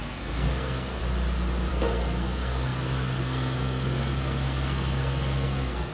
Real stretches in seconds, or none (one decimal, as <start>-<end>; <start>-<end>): 1.0-1.7